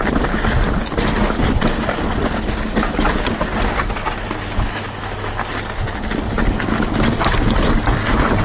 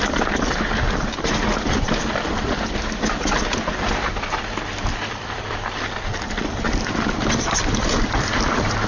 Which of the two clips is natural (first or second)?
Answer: first